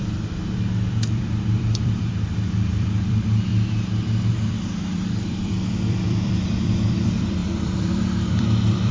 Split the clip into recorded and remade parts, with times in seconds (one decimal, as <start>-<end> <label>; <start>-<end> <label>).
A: 0.0-3.5 remade; 3.5-4.3 recorded; 4.3-8.9 remade